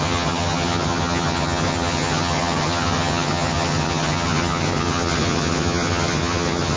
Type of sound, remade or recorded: remade